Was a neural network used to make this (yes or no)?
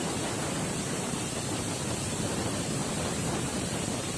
yes